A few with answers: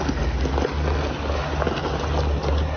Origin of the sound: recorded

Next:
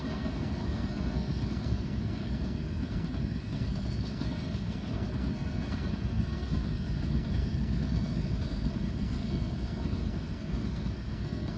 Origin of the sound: remade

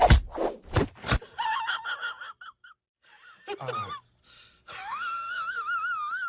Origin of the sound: recorded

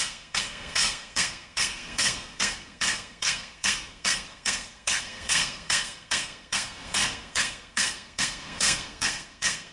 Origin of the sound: remade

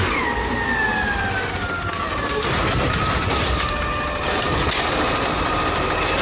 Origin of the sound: recorded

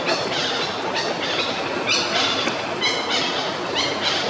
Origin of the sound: recorded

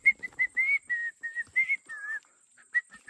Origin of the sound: recorded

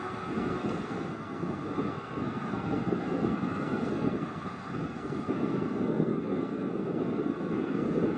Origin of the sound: remade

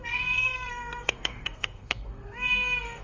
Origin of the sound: remade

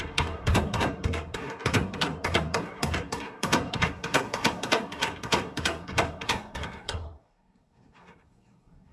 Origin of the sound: remade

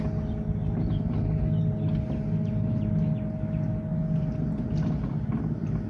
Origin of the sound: recorded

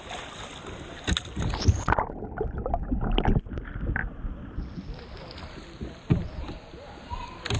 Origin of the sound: recorded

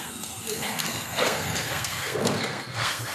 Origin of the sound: remade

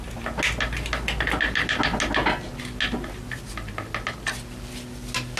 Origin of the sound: recorded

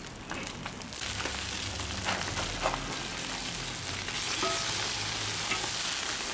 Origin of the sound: recorded